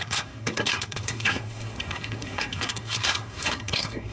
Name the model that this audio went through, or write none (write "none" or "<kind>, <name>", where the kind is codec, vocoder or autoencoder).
codec, SNAC